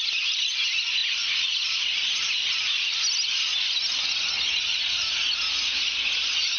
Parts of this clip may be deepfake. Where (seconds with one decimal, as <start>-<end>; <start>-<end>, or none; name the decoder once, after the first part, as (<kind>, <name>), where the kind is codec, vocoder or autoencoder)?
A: none